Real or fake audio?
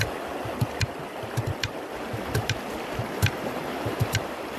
real